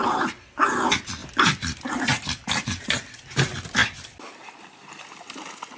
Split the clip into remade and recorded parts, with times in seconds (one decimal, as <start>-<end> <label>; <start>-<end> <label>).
0.0-0.6 remade; 0.6-1.2 recorded; 1.2-2.8 remade; 2.8-3.8 recorded; 3.8-5.3 remade; 5.3-5.8 recorded